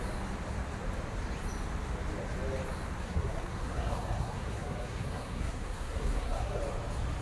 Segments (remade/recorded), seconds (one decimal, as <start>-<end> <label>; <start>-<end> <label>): 0.0-3.0 recorded; 3.0-6.6 remade; 6.6-7.2 recorded